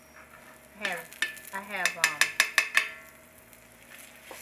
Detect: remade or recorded recorded